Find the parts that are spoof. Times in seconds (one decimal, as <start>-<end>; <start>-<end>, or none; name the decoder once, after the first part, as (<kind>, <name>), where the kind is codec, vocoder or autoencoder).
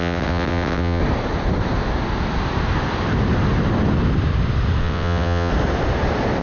0.0-1.0 (vocoder, WaveNeXt); 4.8-5.5